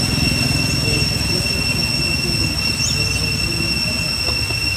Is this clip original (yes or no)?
yes